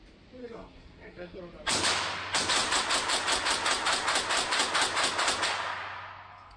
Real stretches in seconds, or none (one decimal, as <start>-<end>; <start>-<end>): 0.0-0.4; 1.4-6.6